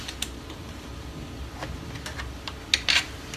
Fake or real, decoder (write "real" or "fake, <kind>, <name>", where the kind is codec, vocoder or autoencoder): real